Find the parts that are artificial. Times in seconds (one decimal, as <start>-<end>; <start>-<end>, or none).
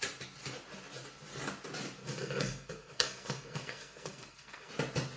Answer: 2.0-4.7